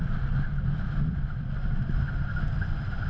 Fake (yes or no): no